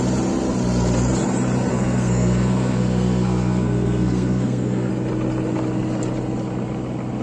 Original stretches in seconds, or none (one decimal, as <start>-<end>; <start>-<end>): 0.0-1.7; 4.9-7.2

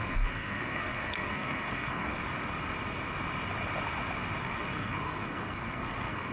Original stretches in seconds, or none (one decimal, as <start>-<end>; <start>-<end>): 2.1-4.4